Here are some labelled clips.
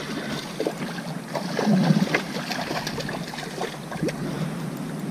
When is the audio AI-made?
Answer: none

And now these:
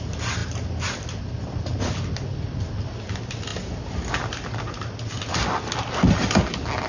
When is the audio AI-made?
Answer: none

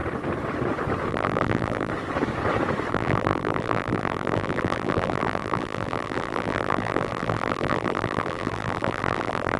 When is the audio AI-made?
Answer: 1.1-1.9 (vocoder, BigVGAN v2); 2.9-9.6

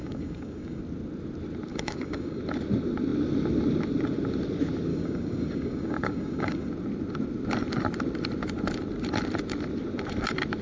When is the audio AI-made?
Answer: 0.0-0.8 (codec, DAC); 1.7-2.4; 4.9-6.7

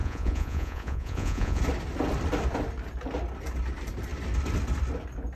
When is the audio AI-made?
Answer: 0.0-1.6 (vocoder, Vocos)